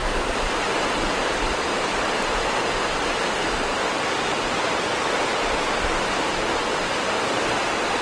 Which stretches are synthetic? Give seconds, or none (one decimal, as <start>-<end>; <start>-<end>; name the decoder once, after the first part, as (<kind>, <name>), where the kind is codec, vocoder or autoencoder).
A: none